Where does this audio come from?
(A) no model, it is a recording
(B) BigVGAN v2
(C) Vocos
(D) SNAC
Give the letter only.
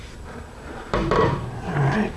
B